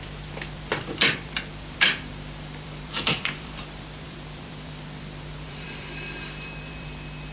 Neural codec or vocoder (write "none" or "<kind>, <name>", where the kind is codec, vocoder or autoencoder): vocoder, BigVGAN v2